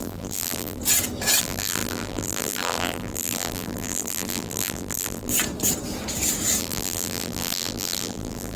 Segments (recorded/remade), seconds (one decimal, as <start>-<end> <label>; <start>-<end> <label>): 0.0-0.8 remade; 0.8-1.4 recorded; 1.4-5.3 remade; 5.3-6.6 recorded; 6.6-8.6 remade